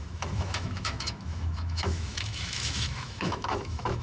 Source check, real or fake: fake